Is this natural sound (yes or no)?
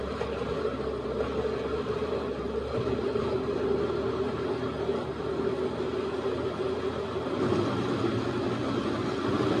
yes